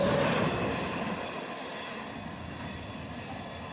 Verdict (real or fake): real